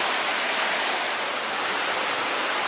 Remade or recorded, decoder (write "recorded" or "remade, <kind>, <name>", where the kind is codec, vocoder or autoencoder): recorded